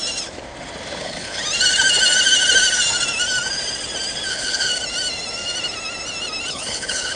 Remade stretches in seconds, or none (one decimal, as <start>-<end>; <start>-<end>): 1.0-1.4; 4.3-4.7; 6.5-7.2